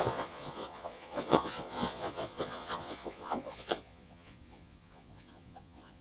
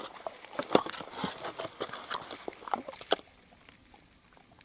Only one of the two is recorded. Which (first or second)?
second